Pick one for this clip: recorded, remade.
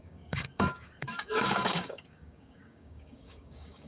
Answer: remade